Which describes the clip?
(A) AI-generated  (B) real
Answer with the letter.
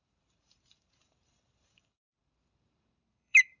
A